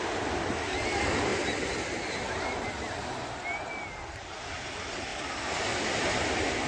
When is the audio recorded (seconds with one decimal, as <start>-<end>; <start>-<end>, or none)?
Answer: 0.0-5.1; 6.3-6.7